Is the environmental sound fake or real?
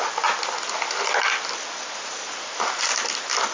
real